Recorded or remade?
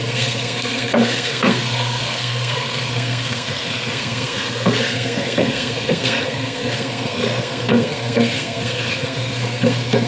remade